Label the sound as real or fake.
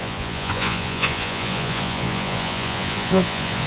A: fake